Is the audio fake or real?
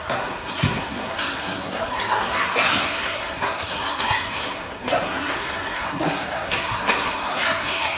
fake